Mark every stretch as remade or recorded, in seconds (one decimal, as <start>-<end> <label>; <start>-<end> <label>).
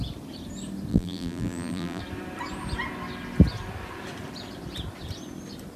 0.0-0.9 recorded; 0.9-2.0 remade; 2.0-5.8 recorded